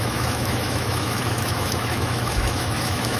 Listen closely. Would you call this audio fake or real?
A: fake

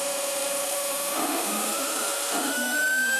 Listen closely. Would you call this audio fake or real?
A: fake